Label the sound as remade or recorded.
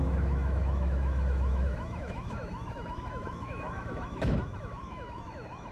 remade